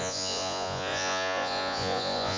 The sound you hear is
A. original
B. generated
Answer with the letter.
B